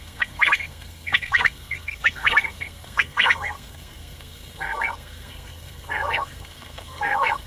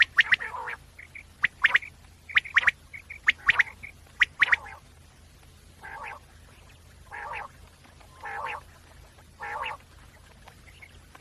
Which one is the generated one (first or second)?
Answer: first